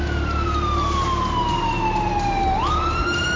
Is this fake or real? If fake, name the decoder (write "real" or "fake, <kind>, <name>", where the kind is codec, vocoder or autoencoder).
real